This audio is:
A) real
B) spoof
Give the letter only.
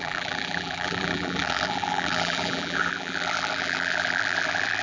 B